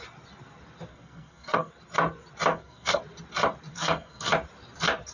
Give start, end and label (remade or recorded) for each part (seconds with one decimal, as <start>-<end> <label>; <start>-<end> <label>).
0.0-0.9 recorded; 0.9-1.7 remade; 1.7-2.5 recorded; 2.5-3.0 remade; 3.0-3.7 recorded; 3.7-4.3 remade; 4.3-5.1 recorded